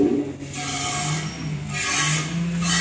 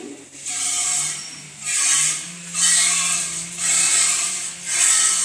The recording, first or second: first